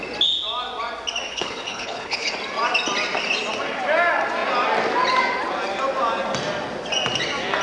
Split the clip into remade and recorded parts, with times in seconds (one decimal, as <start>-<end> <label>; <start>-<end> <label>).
0.0-1.3 recorded; 1.3-2.3 remade; 2.3-7.6 recorded